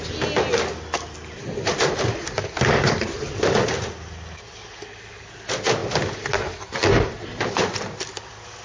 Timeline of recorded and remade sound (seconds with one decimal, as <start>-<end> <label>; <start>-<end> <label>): 0.0-8.6 recorded